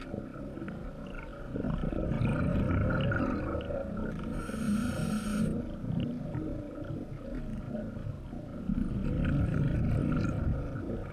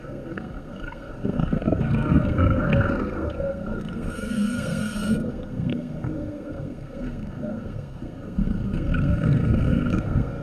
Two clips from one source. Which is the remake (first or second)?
second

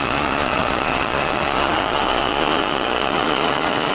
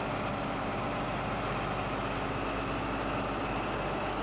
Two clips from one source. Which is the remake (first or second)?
first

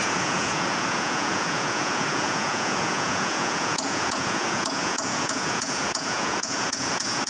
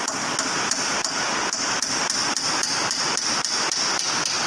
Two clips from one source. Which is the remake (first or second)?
first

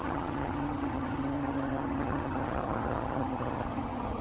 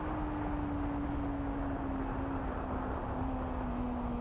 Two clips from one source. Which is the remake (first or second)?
first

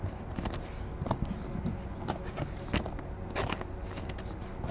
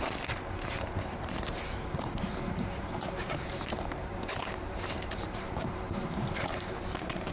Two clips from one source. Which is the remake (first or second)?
second